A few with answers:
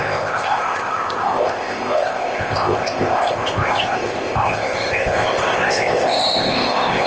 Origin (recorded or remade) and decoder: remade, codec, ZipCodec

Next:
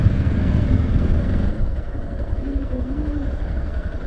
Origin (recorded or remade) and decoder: remade, codec, SNAC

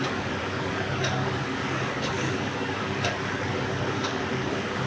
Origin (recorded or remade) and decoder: remade, codec, DAC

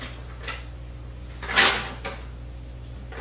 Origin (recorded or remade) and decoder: recorded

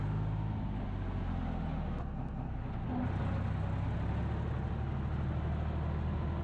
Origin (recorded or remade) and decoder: recorded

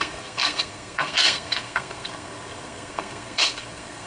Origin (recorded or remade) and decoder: remade, codec, SNAC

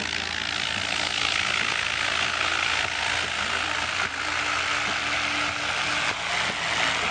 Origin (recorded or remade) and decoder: recorded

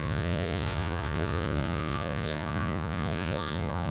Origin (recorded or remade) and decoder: remade, vocoder, Vocos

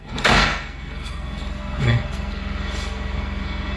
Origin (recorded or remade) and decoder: remade, codec, SNAC